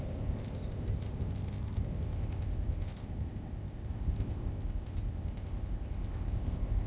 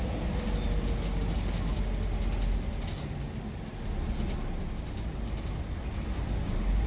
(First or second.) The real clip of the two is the second